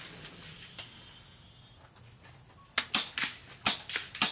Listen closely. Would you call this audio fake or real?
real